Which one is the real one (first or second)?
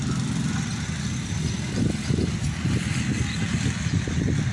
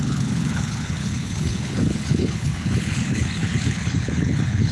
first